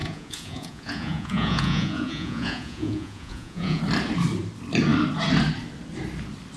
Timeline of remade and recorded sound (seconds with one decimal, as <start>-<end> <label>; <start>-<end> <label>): 0.0-3.8 remade; 3.8-6.6 recorded